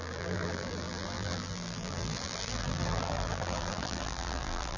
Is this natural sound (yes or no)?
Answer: no